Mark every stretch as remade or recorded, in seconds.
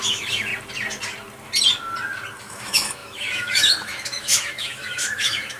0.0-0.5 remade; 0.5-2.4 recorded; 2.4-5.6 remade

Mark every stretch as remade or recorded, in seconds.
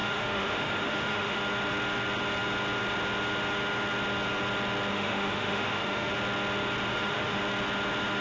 0.0-1.4 remade; 1.4-4.9 recorded; 4.9-6.1 remade; 6.1-6.9 recorded; 6.9-7.4 remade; 7.4-8.2 recorded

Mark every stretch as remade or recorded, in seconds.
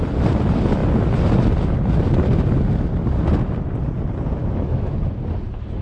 0.0-4.4 recorded; 4.4-5.0 remade; 5.0-5.8 recorded